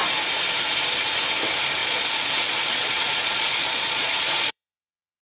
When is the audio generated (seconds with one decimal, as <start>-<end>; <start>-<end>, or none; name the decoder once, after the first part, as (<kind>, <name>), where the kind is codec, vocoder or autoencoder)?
1.8-5.2 (vocoder, Vocos)